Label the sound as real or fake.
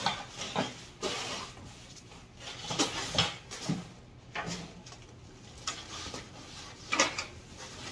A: real